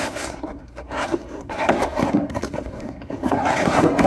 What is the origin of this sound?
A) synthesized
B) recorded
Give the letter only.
A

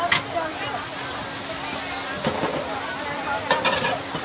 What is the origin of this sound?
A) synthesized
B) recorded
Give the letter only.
B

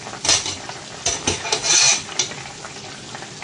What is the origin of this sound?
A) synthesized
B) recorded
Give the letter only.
B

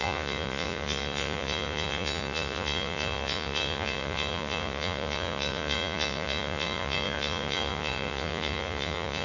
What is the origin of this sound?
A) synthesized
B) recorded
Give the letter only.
A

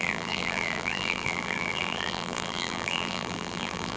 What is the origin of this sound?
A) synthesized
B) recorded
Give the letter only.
A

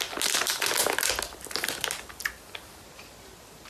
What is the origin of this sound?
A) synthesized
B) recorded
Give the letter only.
B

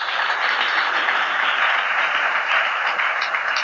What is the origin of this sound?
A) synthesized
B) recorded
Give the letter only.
A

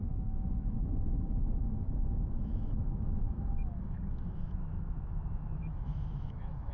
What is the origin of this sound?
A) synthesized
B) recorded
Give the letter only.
A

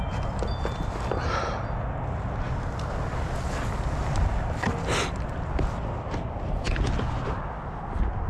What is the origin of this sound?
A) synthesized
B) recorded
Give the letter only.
B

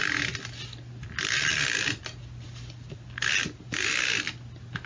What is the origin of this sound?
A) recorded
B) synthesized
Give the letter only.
A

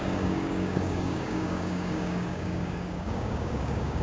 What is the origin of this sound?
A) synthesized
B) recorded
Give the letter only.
A